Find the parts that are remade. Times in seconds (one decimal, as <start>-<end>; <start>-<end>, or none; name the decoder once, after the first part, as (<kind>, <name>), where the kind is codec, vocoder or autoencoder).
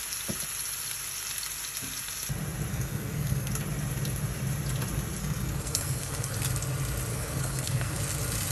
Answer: 2.7-3.5 (codec, SNAC); 5.2-6.3; 7.1-8.0